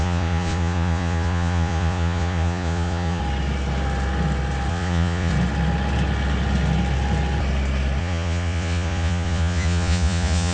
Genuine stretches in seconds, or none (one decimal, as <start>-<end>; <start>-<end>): 3.2-4.7; 5.3-8.0